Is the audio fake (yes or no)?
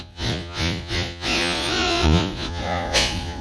yes